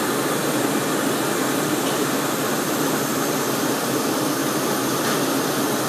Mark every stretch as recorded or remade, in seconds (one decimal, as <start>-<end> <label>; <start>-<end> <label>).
0.0-5.9 recorded